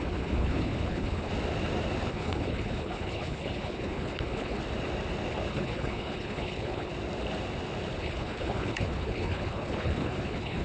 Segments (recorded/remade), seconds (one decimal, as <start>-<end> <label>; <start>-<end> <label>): 0.0-1.3 remade; 1.3-2.1 recorded; 2.1-4.6 remade; 4.6-5.5 recorded; 5.5-6.9 remade; 6.9-8.0 recorded; 8.0-10.6 remade